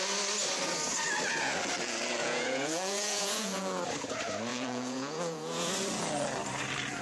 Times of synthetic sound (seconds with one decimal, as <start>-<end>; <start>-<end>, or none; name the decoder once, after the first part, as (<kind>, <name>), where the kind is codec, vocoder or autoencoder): 2.2-3.8 (vocoder, Vocos); 4.5-5.7